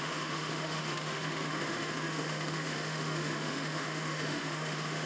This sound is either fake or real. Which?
fake